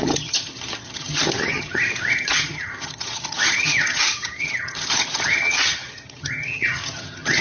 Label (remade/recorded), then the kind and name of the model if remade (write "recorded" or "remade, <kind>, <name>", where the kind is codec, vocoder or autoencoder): remade, vocoder, HiFi-GAN